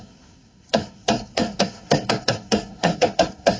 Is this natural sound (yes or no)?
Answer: no